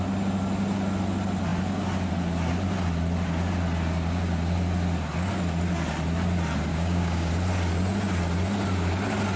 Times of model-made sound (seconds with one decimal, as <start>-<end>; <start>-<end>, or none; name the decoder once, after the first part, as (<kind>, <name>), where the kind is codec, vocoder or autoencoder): 6.7-7.3 (codec, DAC)